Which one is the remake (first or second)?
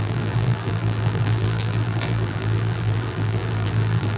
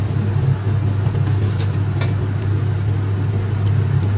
first